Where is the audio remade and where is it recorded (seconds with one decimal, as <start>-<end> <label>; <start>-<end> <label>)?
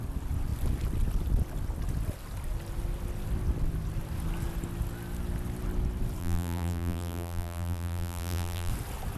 0.0-6.2 recorded; 6.2-8.7 remade; 8.7-9.2 recorded